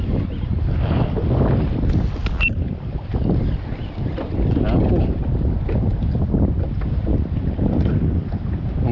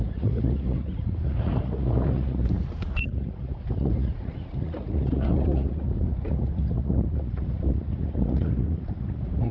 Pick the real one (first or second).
first